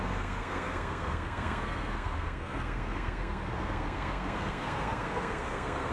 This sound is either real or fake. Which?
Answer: fake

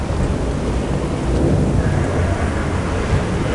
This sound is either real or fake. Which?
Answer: real